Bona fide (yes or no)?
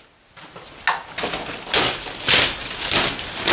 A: yes